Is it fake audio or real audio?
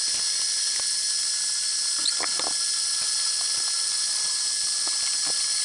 real